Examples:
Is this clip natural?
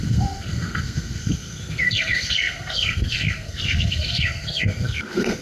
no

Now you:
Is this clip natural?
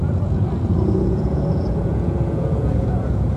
no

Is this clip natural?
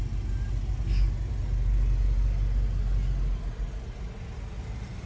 yes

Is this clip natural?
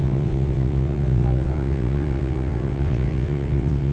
no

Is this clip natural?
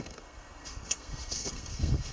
no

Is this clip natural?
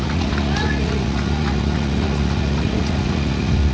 no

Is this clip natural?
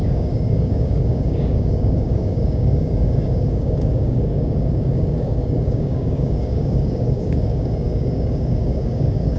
no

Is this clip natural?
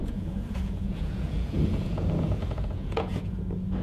no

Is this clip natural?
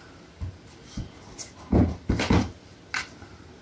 yes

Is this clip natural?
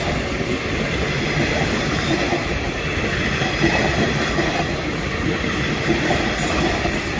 yes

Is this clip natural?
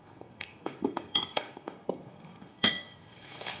no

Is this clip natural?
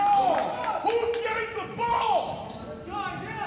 yes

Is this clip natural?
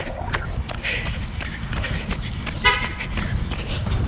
yes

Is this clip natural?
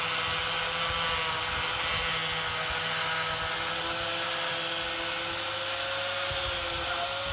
yes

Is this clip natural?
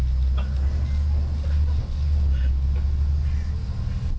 yes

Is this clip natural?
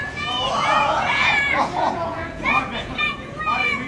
no